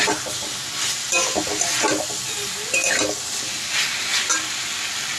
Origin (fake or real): real